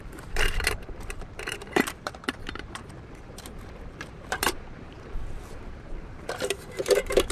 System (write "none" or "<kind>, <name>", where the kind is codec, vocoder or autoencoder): vocoder, BigVGAN v2